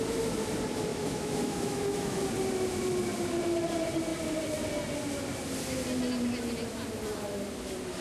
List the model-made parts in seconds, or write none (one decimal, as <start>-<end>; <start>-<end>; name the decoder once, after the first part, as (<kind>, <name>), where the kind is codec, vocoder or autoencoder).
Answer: 0.9-2.2 (autoencoder, DAC-VAE)